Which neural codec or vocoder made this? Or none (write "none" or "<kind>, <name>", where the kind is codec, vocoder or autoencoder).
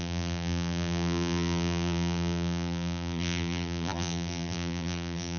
vocoder, BigVGAN v2